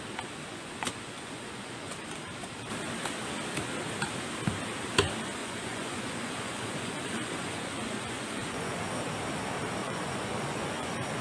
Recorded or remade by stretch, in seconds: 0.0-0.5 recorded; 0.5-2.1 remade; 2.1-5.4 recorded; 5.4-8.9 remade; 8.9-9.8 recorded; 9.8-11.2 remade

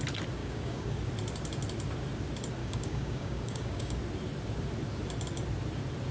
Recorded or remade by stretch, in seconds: 0.0-0.4 recorded; 0.4-1.0 remade; 1.0-2.6 recorded; 2.6-4.0 remade; 4.0-6.1 recorded

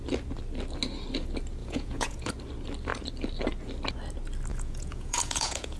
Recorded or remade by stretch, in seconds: 0.0-1.6 recorded; 1.6-2.3 remade; 2.3-4.5 recorded; 4.5-5.8 remade

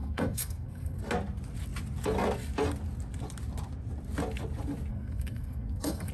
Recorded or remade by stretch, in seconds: 0.0-1.0 remade; 1.0-4.9 recorded; 4.9-6.1 remade

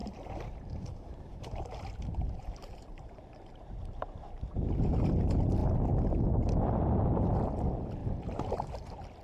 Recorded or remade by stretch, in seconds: 0.0-5.1 remade; 5.1-8.0 recorded; 8.0-8.7 remade; 8.7-9.2 recorded